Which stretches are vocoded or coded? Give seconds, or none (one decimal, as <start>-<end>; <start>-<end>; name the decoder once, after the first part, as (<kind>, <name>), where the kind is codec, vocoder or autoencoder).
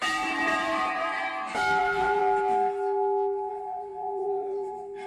0.0-1.3 (vocoder, BigVGAN v2); 1.8-2.2; 3.5-5.1